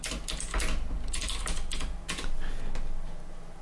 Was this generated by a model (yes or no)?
no